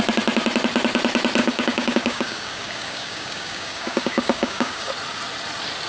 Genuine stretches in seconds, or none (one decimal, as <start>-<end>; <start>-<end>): 0.0-1.4; 4.9-5.9